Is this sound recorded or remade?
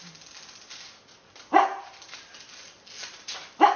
recorded